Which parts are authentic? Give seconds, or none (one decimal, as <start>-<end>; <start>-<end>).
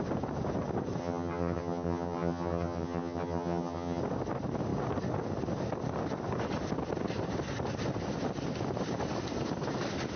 0.0-1.0; 4.0-10.2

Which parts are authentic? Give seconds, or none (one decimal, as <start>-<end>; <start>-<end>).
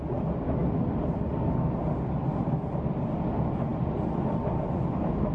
0.0-5.3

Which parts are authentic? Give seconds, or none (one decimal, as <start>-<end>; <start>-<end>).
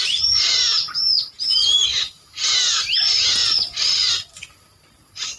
0.0-3.4; 4.6-5.4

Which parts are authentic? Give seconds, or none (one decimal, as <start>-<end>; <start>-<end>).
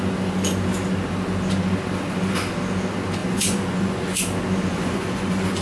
0.0-3.2; 4.2-4.7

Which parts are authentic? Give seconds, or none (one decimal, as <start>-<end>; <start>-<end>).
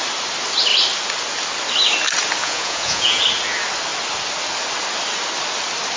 0.0-2.4; 3.2-6.0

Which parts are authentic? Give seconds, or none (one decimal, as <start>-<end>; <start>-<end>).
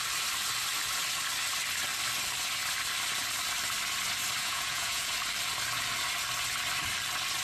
0.0-4.4; 5.1-7.4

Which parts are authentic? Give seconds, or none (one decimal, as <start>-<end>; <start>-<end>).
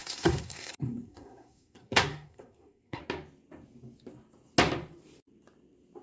3.0-6.0